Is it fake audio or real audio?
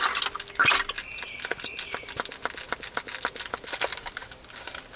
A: real